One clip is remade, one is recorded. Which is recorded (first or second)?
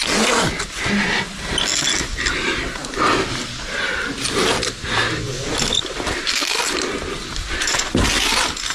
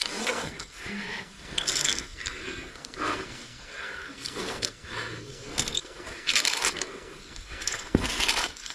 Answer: first